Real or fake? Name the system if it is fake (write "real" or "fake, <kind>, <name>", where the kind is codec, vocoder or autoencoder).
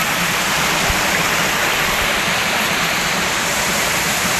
real